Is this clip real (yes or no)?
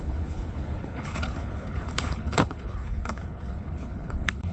no